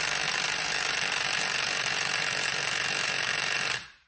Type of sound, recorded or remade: remade